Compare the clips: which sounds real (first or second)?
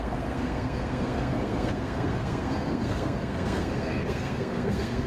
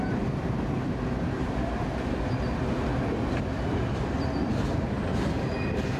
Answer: second